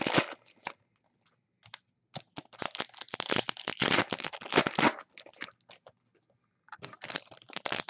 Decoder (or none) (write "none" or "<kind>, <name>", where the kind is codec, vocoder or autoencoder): none